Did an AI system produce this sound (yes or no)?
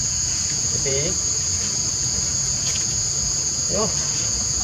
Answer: yes